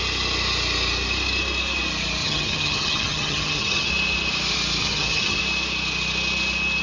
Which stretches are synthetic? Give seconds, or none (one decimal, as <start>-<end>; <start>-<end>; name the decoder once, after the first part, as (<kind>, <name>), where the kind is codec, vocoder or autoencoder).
2.2-3.9 (vocoder, HiFi-GAN); 4.8-5.4